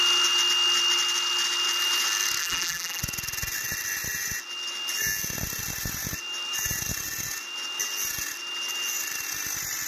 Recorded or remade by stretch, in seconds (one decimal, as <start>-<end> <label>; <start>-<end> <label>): 0.0-2.4 recorded; 2.4-3.0 remade; 3.0-9.9 recorded